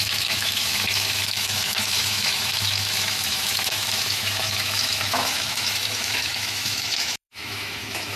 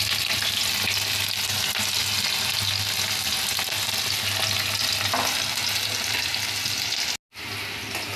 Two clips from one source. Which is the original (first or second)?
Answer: second